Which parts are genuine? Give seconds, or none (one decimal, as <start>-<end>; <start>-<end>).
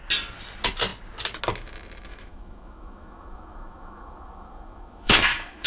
0.0-2.1